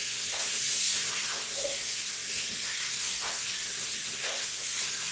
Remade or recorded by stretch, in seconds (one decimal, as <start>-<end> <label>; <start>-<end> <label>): 0.0-5.1 remade